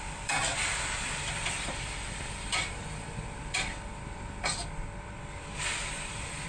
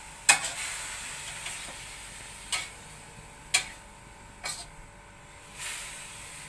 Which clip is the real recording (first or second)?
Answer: second